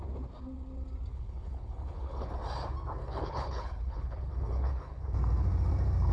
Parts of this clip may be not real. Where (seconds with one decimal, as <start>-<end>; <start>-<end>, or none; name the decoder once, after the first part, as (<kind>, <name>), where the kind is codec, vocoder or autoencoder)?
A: 1.1-2.3 (codec, HILCodec); 3.0-5.0